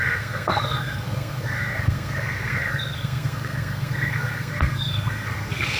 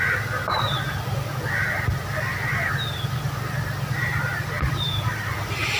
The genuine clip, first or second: second